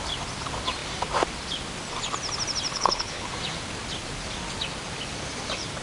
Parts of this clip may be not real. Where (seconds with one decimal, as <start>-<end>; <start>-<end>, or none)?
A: 2.7-3.3